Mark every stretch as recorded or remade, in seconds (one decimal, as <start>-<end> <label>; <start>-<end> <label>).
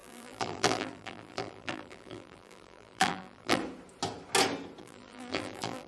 0.0-3.6 remade; 3.6-4.8 recorded; 4.8-5.9 remade